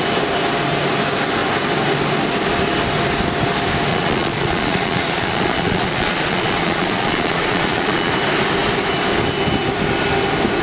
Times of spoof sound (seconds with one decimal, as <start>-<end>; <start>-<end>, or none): 3.9-8.1